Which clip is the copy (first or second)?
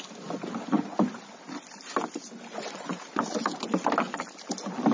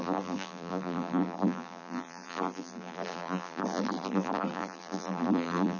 second